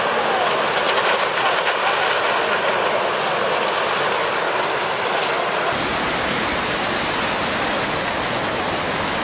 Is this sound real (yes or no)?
yes